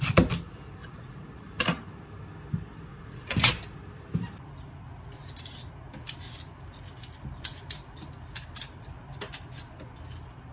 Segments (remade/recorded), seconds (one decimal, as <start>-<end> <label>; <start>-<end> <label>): 0.0-0.8 recorded; 0.8-1.9 remade; 1.9-2.9 recorded; 2.9-3.5 remade; 3.5-10.5 recorded